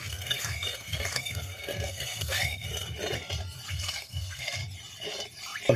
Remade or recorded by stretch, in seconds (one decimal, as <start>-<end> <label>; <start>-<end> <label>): 0.0-2.7 remade; 2.7-3.7 recorded; 3.7-4.6 remade; 4.6-5.8 recorded